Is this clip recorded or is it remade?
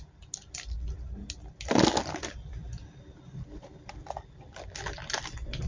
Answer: recorded